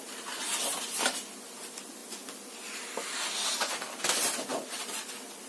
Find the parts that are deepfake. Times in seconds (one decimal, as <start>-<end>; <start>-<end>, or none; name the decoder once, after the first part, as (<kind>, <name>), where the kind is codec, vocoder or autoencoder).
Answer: none